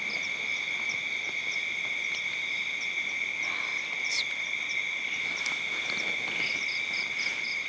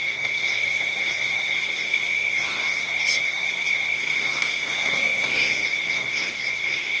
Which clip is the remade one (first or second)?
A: second